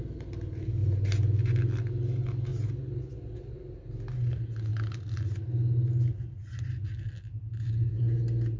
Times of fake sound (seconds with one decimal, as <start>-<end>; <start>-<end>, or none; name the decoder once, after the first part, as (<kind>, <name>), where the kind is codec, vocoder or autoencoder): none

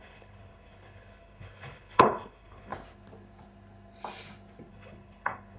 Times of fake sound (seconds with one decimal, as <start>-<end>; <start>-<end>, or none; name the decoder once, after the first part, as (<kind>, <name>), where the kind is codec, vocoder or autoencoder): 0.0-2.7 (codec, HILCodec); 4.7-5.6